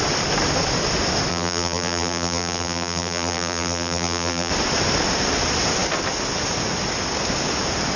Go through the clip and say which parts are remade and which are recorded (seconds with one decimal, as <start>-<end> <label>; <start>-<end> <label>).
0.0-1.3 recorded; 1.3-4.5 remade; 4.5-8.0 recorded